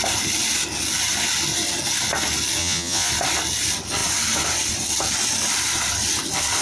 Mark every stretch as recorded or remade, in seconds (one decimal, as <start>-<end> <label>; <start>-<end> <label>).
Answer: 0.0-2.6 recorded; 2.6-3.1 remade; 3.1-6.6 recorded